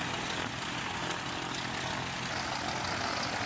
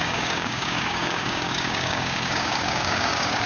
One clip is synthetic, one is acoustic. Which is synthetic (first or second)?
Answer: second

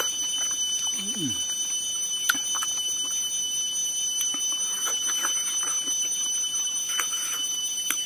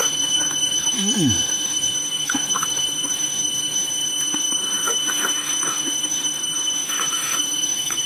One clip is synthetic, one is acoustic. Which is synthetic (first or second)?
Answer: second